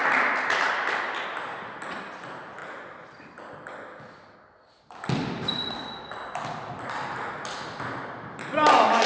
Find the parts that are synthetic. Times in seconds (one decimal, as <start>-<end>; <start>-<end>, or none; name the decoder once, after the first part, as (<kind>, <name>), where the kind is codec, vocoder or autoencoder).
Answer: 0.0-0.7 (vocoder, BigVGAN v2)